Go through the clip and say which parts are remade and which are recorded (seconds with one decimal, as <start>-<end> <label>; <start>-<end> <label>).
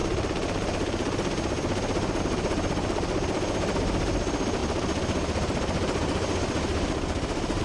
0.0-7.6 recorded